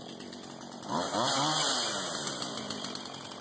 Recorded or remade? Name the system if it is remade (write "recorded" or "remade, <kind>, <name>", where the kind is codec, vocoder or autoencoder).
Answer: recorded